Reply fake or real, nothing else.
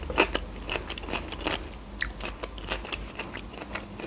real